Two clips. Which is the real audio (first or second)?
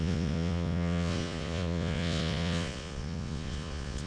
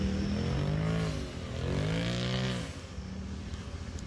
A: second